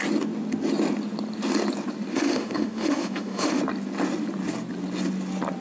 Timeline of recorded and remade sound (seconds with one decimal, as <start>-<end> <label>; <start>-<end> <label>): 0.0-2.1 recorded; 2.1-3.6 remade; 3.6-5.6 recorded